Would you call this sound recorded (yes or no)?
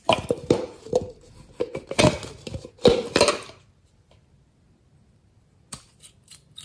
yes